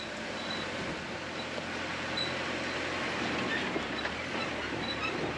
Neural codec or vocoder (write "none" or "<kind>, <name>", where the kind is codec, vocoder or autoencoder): none